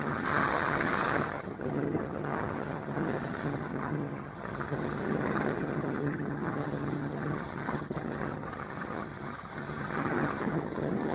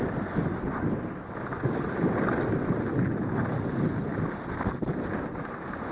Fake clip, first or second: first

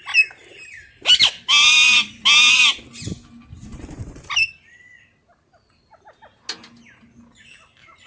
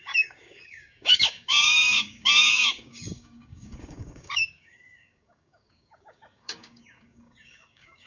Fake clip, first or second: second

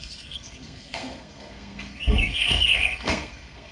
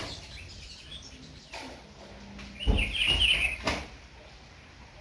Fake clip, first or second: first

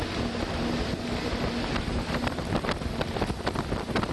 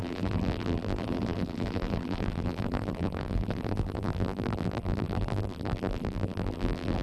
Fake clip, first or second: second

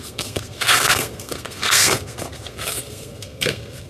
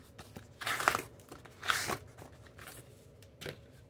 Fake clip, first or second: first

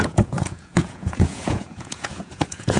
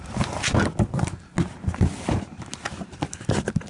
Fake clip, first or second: first